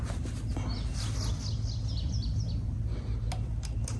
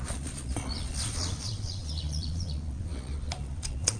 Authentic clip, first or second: first